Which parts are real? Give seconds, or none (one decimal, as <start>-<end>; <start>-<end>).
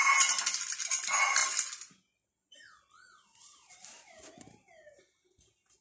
0.0-5.8